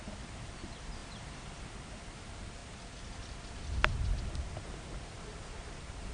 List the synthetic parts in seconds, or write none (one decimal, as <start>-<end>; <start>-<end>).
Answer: 0.0-1.0; 1.8-2.6; 4.5-6.1